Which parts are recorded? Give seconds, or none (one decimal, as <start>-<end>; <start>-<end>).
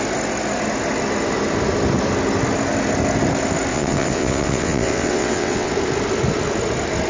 0.0-3.7; 5.7-7.1